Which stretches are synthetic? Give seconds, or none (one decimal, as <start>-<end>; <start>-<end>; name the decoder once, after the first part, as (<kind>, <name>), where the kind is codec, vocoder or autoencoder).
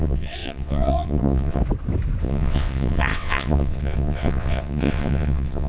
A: 0.0-1.6 (vocoder, WaveNeXt); 2.2-5.7